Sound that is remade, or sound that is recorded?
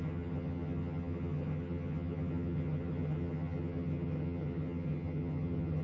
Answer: remade